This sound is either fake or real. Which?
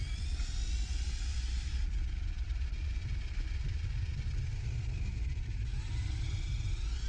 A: real